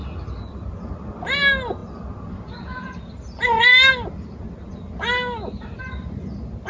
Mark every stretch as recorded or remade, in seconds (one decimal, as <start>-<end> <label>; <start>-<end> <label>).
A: 0.0-6.7 recorded